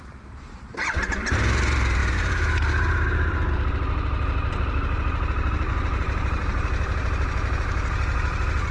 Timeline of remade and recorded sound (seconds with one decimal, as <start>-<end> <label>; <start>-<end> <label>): 0.0-8.7 remade